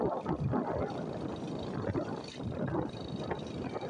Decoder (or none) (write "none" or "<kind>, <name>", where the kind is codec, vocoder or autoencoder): none